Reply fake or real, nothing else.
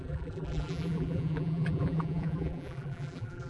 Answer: fake